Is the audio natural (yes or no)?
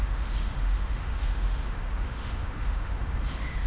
no